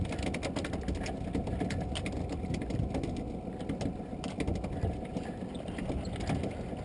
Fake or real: real